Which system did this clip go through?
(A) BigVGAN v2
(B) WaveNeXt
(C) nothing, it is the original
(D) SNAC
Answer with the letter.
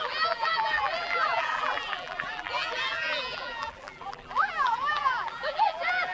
A